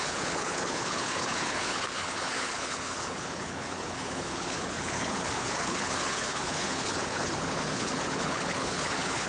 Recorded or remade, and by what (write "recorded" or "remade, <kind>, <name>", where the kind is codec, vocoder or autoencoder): remade, codec, HILCodec